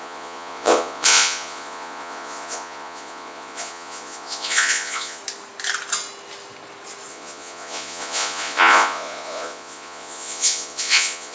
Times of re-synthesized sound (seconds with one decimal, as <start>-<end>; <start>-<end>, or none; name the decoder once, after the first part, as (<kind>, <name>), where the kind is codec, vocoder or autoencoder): 0.0-5.2 (vocoder, Vocos); 7.1-11.3